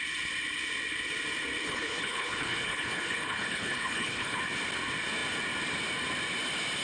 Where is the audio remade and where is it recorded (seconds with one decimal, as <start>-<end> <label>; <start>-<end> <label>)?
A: 0.0-1.6 recorded; 1.6-4.4 remade; 4.4-6.8 recorded